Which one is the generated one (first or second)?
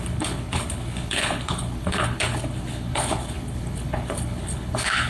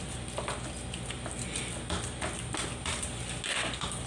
first